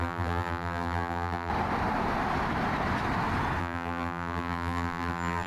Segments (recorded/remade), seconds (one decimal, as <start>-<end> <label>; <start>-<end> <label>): 0.0-1.5 remade; 1.5-3.6 recorded; 3.6-5.5 remade